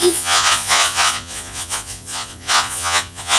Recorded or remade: remade